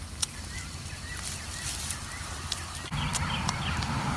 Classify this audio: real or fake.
real